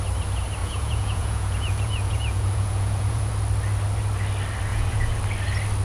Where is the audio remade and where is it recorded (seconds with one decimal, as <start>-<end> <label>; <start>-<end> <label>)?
0.0-0.6 recorded; 0.6-3.3 remade; 3.3-4.7 recorded; 4.7-5.2 remade; 5.2-5.8 recorded